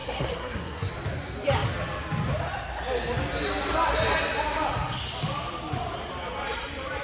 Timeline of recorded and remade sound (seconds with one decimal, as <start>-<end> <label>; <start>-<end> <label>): 0.0-0.9 remade; 0.9-7.0 recorded